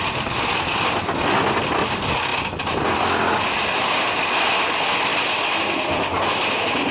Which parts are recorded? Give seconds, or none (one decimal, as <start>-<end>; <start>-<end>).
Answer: 0.0-6.9